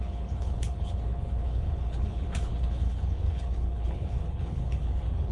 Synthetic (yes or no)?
yes